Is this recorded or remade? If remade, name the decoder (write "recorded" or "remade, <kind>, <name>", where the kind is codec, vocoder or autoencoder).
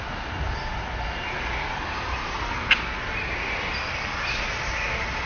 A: recorded